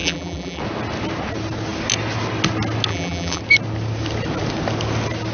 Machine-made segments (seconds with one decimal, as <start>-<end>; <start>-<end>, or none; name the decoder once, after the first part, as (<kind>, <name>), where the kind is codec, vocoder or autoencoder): 0.0-0.6 (vocoder, BigVGAN v2); 2.9-3.4